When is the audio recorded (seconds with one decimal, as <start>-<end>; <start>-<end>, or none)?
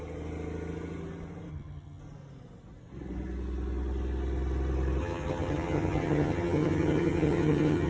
0.0-1.5; 2.0-5.0